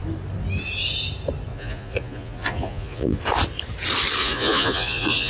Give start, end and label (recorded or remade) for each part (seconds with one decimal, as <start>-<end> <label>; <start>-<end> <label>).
0.0-1.5 recorded; 1.5-3.2 remade; 3.2-4.2 recorded; 4.2-5.3 remade

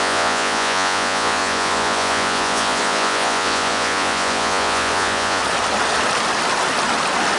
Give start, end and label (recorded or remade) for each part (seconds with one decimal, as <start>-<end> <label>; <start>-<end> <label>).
0.0-5.4 remade; 5.4-7.4 recorded

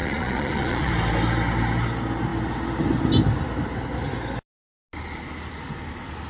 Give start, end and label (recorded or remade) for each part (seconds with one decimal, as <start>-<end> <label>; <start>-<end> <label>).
0.0-0.9 remade; 0.9-6.3 recorded

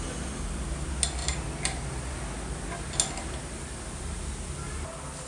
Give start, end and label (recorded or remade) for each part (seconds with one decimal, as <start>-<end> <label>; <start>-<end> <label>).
0.0-5.3 recorded

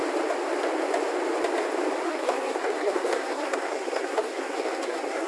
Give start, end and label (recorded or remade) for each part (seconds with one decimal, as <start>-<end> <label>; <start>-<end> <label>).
0.0-2.0 recorded; 2.0-5.3 remade